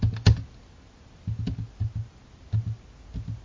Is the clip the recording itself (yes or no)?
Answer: yes